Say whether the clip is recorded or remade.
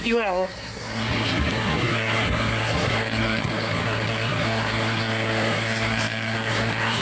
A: remade